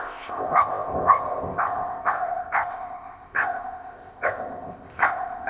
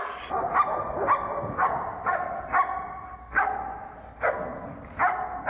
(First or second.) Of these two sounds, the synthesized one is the first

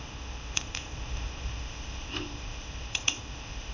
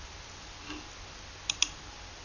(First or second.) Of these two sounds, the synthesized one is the first